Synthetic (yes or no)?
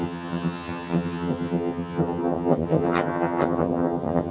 yes